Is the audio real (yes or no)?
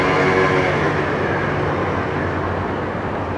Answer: yes